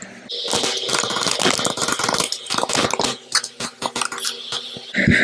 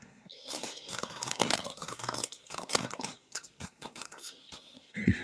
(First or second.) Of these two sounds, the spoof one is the second